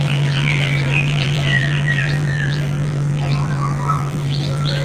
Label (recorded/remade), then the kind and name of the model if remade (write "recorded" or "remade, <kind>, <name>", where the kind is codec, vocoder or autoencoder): remade, vocoder, BigVGAN v2